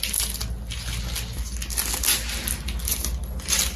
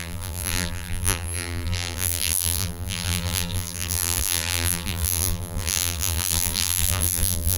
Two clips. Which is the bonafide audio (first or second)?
first